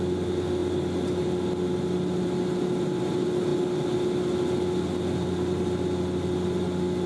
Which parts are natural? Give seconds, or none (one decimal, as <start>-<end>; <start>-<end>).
0.0-7.1